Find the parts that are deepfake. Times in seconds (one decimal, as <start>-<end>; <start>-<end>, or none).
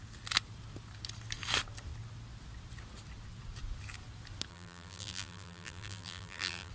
4.5-6.7